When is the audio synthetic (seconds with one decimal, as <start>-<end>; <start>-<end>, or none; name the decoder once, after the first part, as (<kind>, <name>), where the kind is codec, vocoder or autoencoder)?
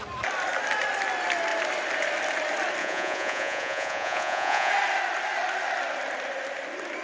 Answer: 2.8-4.7 (vocoder, Vocos)